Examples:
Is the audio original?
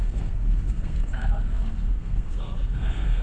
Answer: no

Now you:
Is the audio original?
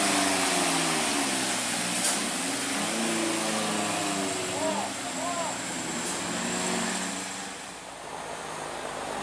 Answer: yes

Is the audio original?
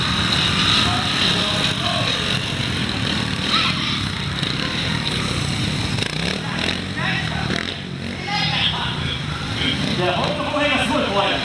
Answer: yes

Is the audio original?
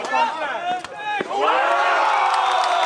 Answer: yes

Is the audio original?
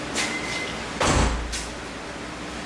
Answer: yes